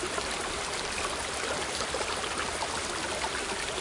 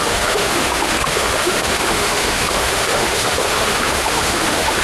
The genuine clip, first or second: first